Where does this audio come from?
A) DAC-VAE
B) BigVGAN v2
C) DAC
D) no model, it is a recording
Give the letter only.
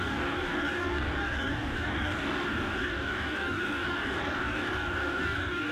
C